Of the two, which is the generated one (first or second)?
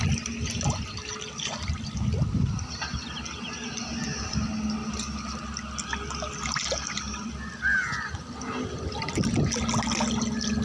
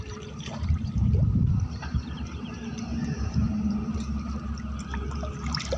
second